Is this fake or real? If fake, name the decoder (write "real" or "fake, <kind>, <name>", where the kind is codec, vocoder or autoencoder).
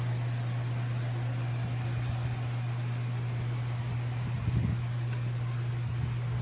real